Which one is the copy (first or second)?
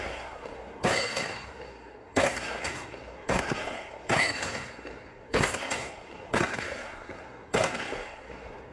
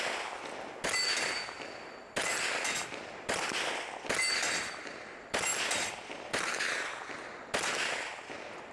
first